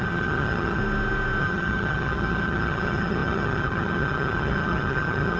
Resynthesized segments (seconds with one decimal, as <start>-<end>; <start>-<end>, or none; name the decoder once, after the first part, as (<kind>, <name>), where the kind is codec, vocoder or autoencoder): 0.0-0.8 (vocoder, HiFi-GAN); 1.4-5.4